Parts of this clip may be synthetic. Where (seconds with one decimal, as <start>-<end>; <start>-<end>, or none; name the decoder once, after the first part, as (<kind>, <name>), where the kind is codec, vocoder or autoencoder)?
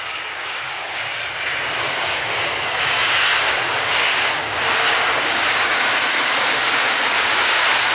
0.0-1.2 (codec, DAC); 1.8-7.9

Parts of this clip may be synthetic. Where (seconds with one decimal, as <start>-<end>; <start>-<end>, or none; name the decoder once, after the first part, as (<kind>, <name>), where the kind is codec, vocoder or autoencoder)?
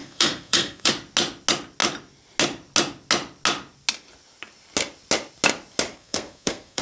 0.0-0.9 (codec, SNAC); 5.9-6.8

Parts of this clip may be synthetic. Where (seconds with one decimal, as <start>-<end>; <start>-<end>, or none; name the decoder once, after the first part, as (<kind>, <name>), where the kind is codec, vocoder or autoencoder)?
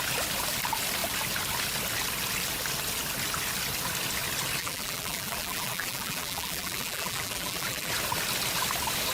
4.6-7.9 (vocoder, BigVGAN v2)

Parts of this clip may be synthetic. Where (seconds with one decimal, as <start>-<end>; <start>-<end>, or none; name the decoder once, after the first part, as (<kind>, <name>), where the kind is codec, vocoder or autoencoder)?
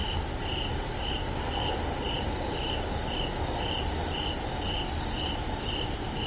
none